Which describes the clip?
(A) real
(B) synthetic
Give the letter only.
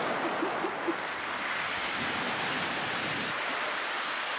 A